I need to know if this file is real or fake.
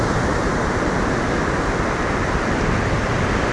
real